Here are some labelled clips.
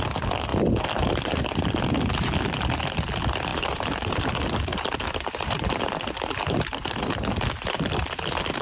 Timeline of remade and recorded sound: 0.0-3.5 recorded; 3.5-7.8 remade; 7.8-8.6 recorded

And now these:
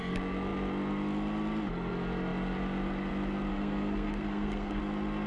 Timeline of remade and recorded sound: 0.0-3.5 recorded; 3.5-4.8 remade; 4.8-5.3 recorded

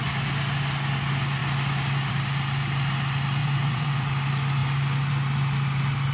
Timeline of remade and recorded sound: 0.0-3.4 recorded; 3.4-4.1 remade; 4.1-6.1 recorded

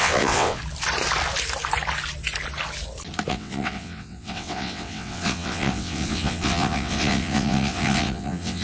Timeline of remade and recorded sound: 0.0-0.6 remade; 0.6-3.3 recorded; 3.3-8.6 remade

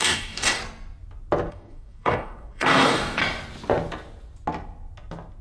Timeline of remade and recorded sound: 0.0-0.6 remade; 0.6-1.5 recorded; 1.5-3.2 remade; 3.2-5.4 recorded

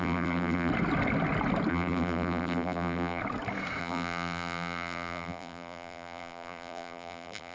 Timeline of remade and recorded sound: 0.0-0.7 remade; 0.7-1.7 recorded; 1.7-3.2 remade; 3.2-3.8 recorded; 3.8-7.5 remade